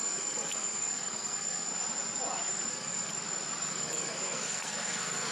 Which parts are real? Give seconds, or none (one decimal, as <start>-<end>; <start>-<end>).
1.7-2.7; 3.1-3.7